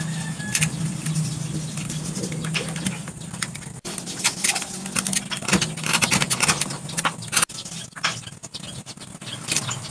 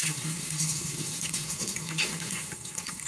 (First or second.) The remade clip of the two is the second